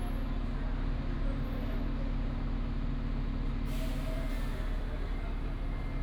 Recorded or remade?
recorded